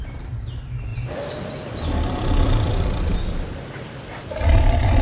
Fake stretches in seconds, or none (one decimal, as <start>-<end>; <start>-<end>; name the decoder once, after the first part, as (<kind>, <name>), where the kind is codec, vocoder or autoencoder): none